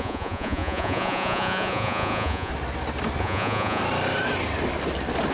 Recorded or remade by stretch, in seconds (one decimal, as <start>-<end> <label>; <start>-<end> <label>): 0.0-2.5 remade; 2.5-3.2 recorded; 3.2-3.8 remade; 3.8-5.3 recorded